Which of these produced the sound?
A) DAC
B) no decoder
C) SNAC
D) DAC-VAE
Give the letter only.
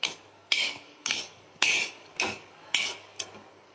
A